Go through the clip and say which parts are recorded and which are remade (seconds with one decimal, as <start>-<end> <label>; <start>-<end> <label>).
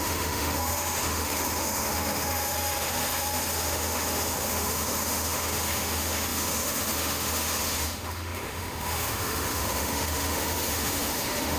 0.0-11.6 remade